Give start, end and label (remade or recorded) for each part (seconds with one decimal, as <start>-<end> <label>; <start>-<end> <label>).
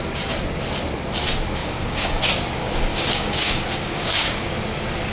0.0-1.6 recorded; 1.6-2.2 remade; 2.2-2.9 recorded; 2.9-4.5 remade; 4.5-5.1 recorded